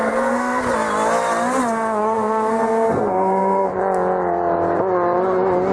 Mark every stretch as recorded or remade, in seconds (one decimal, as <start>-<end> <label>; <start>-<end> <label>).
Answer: 0.0-0.6 remade; 0.6-2.0 recorded; 2.0-3.7 remade; 3.7-5.7 recorded